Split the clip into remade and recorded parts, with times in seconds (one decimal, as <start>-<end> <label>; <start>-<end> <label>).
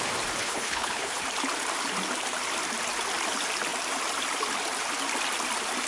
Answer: 0.0-0.4 recorded; 0.4-1.2 remade; 1.2-5.9 recorded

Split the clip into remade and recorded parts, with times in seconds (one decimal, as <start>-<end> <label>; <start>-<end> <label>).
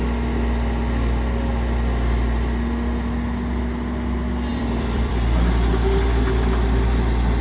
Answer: 0.0-4.5 recorded; 4.5-5.1 remade; 5.1-7.4 recorded